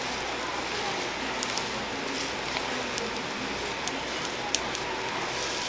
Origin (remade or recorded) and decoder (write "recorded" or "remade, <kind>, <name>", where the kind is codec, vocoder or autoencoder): recorded